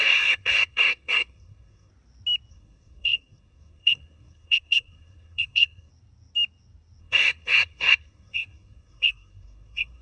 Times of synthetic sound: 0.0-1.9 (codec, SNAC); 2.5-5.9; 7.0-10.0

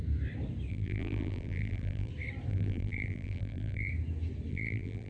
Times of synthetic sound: 0.7-2.1 (vocoder, BigVGAN v2); 2.5-3.9; 4.5-5.1